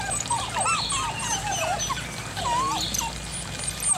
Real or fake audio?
real